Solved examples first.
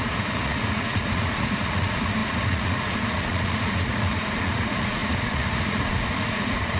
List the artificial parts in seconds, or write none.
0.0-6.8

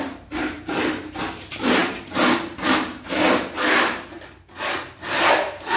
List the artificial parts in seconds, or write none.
0.0-1.8; 5.3-5.8

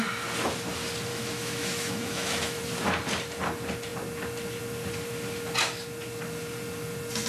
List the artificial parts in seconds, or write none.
1.1-2.6

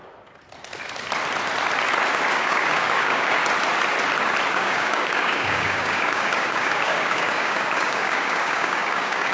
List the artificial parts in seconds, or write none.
2.3-3.4; 4.5-9.3